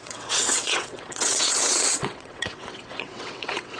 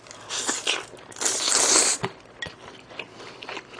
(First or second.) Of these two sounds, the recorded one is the second